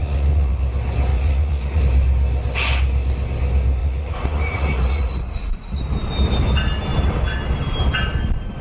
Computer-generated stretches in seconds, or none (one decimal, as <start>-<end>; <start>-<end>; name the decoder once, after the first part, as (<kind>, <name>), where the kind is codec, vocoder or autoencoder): 0.0-0.6 (vocoder, Vocos); 1.1-1.8; 3.8-5.8